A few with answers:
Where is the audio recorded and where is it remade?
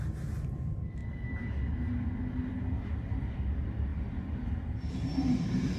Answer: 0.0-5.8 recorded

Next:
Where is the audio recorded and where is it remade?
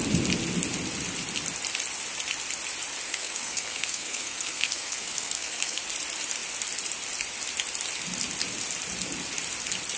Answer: 0.0-3.1 recorded; 3.1-5.8 remade; 5.8-10.0 recorded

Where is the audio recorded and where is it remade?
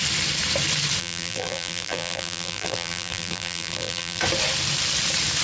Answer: 0.0-1.0 recorded; 1.0-4.2 remade; 4.2-5.4 recorded